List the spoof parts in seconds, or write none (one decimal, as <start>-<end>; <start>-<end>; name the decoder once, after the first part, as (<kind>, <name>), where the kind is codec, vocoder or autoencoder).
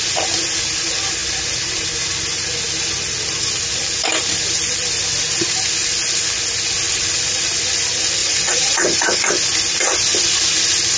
8.2-9.2 (vocoder, Vocos)